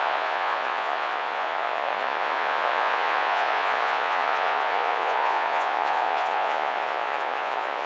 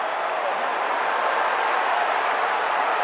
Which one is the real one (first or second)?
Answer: second